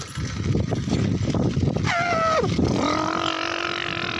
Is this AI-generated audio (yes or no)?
no